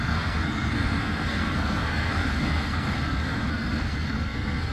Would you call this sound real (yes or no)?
no